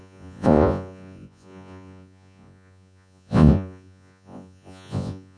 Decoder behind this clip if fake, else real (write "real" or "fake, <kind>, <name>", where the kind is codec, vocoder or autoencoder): fake, vocoder, Vocos